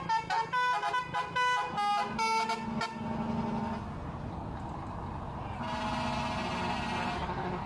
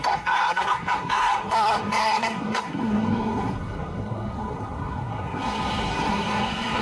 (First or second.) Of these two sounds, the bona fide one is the first